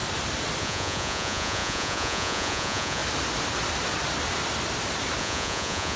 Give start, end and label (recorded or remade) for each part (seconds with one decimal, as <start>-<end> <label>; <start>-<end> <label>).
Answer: 0.0-0.6 recorded; 0.6-3.0 remade; 3.0-5.2 recorded; 5.2-6.0 remade